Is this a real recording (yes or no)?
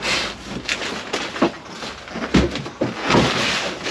yes